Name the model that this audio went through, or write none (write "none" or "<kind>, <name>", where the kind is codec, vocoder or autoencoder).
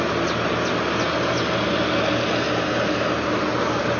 none